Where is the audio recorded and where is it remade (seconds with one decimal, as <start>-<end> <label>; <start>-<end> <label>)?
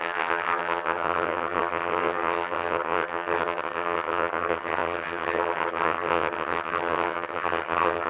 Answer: 0.0-8.1 remade